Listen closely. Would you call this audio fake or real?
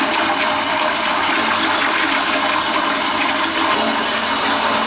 real